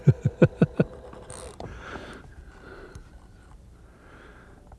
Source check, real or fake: fake